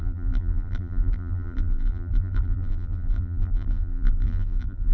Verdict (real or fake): fake